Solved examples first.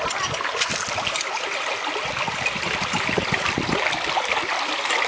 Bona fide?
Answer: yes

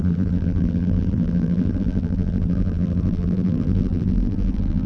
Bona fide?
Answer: no